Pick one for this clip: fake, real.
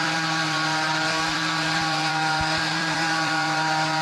fake